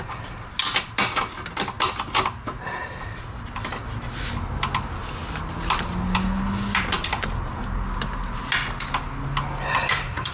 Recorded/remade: recorded